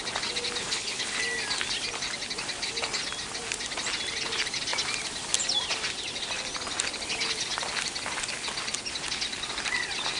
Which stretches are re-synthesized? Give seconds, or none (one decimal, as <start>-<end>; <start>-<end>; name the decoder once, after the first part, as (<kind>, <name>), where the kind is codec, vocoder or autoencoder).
0.6-1.2 (codec, HILCodec)